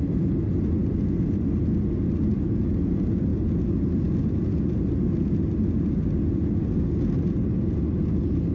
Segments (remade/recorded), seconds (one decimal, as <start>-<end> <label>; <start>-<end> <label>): 0.0-8.5 recorded